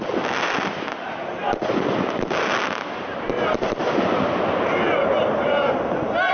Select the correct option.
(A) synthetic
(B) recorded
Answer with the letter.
B